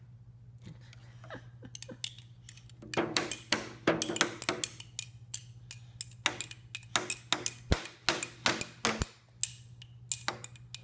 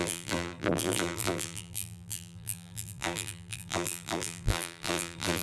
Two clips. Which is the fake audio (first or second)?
second